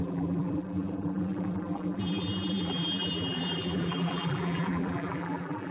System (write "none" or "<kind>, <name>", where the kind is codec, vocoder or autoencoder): vocoder, BigVGAN v2